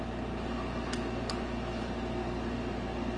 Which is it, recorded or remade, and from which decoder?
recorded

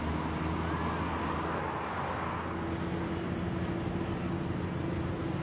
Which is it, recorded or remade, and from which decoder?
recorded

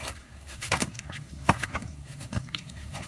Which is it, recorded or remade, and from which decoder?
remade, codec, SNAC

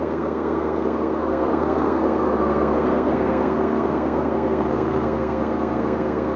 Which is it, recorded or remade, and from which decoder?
remade, codec, SNAC